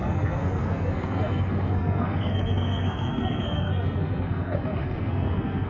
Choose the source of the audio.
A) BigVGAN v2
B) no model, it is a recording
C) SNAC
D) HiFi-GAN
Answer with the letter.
C